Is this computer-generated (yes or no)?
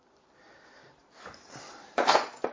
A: yes